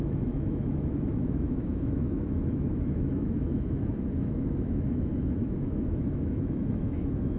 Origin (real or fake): fake